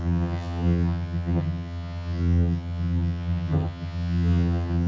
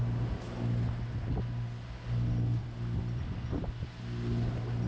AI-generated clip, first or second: first